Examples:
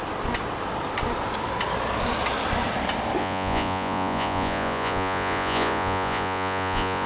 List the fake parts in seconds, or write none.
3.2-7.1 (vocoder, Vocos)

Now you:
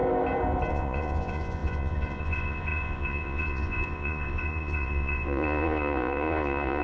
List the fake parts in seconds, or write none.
0.7-6.8 (vocoder, Vocos)

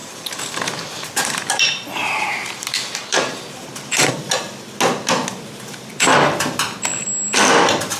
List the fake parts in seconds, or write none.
0.0-4.1 (vocoder, BigVGAN v2)

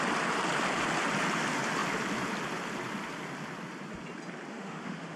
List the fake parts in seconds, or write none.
4.5-5.2 (autoencoder, DAC-VAE)

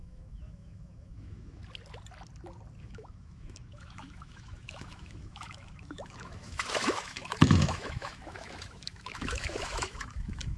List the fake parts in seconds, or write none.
0.0-1.6 (autoencoder, DAC-VAE); 2.8-10.6

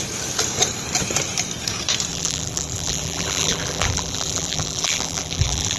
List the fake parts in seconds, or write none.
2.1-5.8 (vocoder, BigVGAN v2)